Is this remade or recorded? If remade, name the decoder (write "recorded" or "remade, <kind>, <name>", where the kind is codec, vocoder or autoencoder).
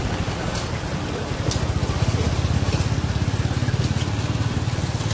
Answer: recorded